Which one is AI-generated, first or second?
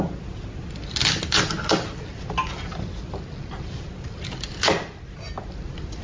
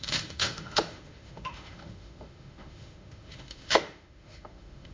second